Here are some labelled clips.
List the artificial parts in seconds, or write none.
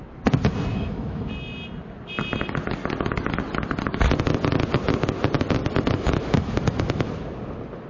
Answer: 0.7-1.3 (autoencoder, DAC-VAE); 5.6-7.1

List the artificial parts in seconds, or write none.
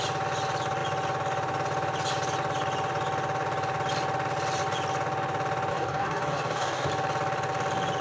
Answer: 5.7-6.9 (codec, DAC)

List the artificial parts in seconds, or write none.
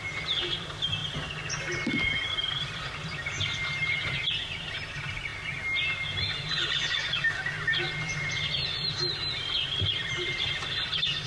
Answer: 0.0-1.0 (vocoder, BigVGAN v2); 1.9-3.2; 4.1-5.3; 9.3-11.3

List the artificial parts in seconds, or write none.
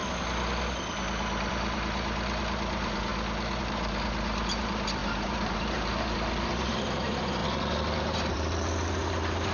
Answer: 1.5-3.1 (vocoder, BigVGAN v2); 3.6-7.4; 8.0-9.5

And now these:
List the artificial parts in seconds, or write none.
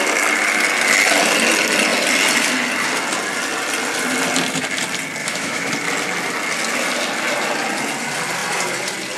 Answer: 5.2-5.7 (autoencoder, DAC-VAE)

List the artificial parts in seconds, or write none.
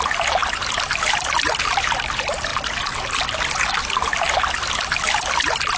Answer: 0.4-1.6 (vocoder, BigVGAN v2)